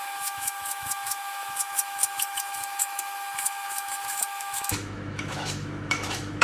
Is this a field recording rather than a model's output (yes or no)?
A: no